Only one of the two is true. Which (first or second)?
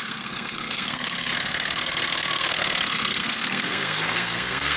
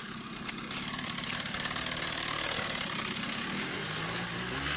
second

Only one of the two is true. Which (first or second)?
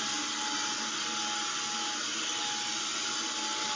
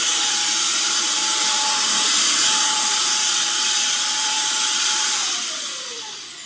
first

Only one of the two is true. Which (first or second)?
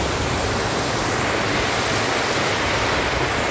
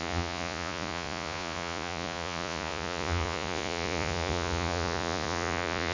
first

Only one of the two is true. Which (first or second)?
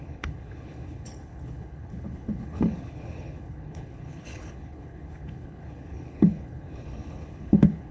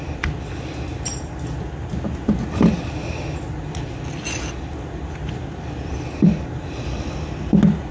second